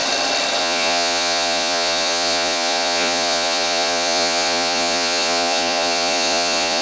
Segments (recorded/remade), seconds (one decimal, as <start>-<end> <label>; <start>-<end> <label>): 0.0-0.6 recorded; 0.6-6.8 remade